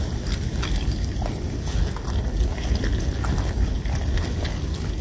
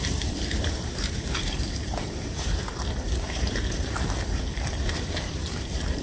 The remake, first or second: second